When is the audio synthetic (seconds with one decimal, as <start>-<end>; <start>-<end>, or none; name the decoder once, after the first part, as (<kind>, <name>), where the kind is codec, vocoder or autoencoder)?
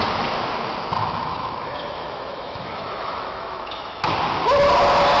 1.0-4.1 (autoencoder, DAC-VAE)